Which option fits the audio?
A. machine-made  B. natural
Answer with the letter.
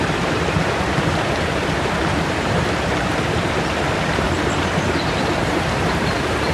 A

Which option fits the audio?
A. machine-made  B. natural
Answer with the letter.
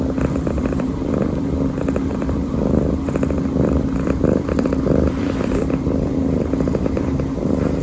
A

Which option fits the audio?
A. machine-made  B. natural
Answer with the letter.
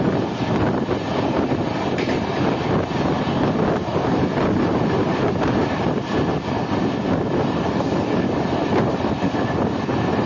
B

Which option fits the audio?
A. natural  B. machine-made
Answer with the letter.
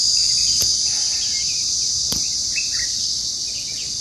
B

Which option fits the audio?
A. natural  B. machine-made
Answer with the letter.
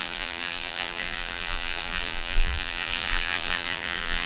B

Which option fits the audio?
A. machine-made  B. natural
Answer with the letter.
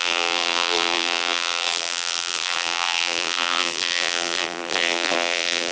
A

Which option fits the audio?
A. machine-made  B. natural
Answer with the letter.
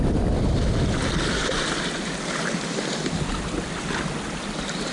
B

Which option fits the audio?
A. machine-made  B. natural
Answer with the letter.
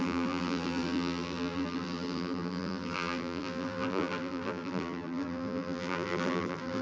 A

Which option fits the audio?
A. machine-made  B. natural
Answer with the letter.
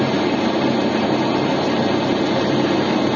B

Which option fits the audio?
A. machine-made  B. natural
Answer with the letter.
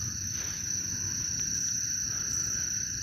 A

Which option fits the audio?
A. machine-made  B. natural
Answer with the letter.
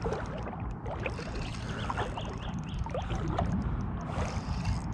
B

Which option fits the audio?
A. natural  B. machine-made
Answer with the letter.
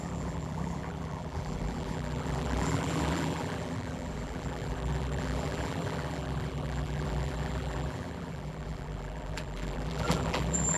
B